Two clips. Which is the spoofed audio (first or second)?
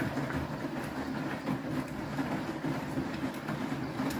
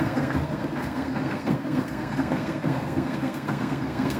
second